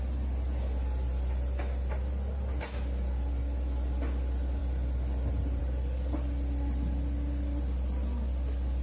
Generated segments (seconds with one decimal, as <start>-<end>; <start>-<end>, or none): none